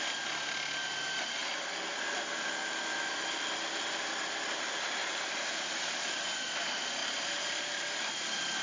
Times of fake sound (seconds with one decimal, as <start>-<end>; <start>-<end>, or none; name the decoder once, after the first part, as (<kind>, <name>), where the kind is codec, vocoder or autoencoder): 5.0-5.7 (vocoder, BigVGAN v2); 7.0-8.1